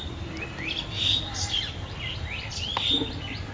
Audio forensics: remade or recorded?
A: remade